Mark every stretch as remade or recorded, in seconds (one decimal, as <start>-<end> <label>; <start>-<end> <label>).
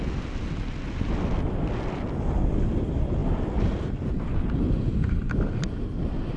0.0-6.4 recorded